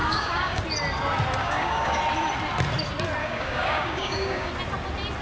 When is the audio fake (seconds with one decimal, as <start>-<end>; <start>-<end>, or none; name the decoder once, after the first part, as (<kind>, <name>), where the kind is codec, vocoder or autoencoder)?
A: 0.0-0.6 (codec, DAC); 1.4-2.0; 3.2-4.5